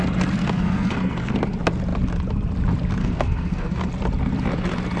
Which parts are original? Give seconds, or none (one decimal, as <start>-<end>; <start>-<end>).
0.0-0.4; 1.3-3.0; 3.9-5.0